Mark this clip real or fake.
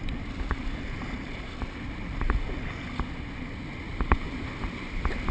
real